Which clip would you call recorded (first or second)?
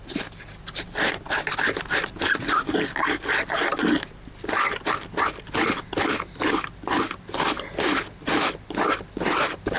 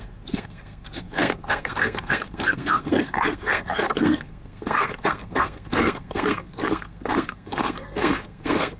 first